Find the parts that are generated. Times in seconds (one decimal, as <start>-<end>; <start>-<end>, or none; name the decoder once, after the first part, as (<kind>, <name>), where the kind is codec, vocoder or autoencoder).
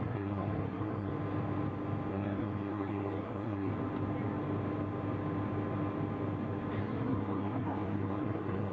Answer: 0.0-1.1 (codec, SNAC); 2.1-3.7; 6.8-8.7